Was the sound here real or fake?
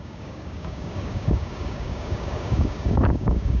fake